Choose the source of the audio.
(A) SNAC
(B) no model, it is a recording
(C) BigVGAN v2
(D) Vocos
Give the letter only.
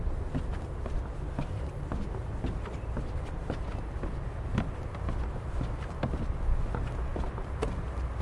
B